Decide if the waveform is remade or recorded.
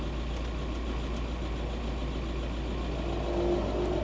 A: recorded